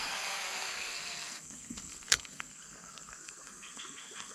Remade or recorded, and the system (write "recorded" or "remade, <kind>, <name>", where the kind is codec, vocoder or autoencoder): remade, codec, SNAC